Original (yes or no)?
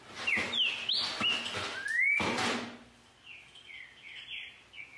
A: yes